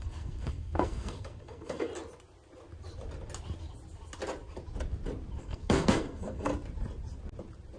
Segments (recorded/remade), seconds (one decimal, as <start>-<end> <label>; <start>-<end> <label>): 0.0-1.9 remade; 1.9-5.4 recorded; 5.4-6.5 remade; 6.5-7.8 recorded